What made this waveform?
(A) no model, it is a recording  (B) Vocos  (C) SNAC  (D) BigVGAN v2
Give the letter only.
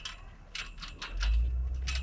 A